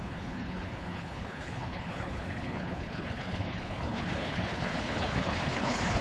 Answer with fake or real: fake